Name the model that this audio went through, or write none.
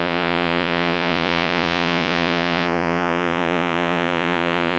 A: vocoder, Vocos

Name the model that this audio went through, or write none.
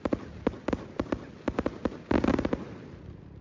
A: none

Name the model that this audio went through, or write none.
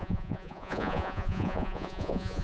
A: vocoder, Vocos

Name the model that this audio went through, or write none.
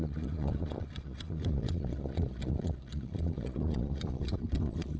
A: vocoder, Vocos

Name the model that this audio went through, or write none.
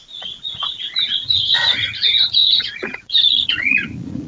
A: vocoder, Vocos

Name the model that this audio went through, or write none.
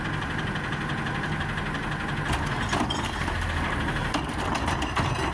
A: none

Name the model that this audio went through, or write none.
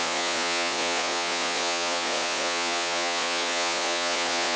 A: vocoder, Vocos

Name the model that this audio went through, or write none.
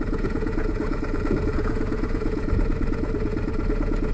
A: vocoder, Vocos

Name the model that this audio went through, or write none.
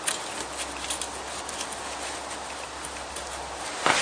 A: none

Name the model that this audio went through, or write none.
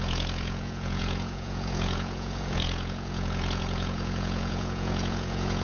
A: vocoder, Vocos